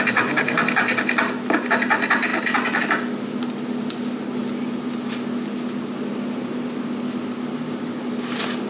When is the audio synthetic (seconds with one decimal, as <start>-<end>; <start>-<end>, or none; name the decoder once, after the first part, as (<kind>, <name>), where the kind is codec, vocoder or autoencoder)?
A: none